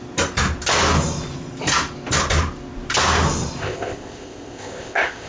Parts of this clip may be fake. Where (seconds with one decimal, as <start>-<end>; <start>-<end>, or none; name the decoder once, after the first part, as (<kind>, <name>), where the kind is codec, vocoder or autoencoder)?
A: 3.6-5.3 (codec, ZipCodec)